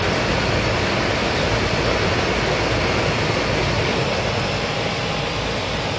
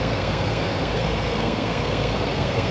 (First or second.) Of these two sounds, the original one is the first